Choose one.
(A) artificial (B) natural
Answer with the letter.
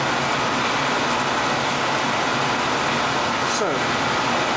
B